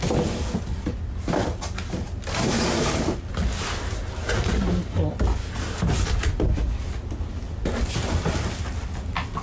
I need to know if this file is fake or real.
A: real